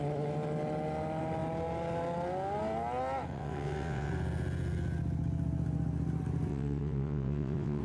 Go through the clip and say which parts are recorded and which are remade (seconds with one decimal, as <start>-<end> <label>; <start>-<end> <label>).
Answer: 0.0-3.3 recorded; 3.3-4.1 remade; 4.1-6.5 recorded; 6.5-7.8 remade